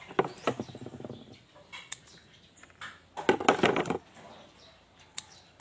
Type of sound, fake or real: real